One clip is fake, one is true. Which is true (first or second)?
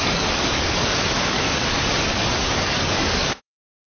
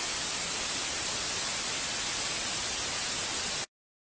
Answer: second